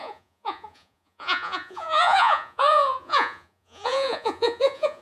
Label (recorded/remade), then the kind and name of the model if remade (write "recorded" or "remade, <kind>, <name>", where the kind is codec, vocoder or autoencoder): remade, vocoder, Vocos